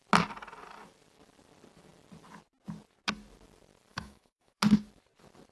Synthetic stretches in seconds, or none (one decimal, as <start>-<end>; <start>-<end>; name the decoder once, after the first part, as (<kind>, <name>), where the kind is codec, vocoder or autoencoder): 3.9-4.6 (autoencoder, DAC-VAE)